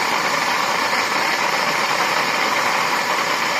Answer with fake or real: fake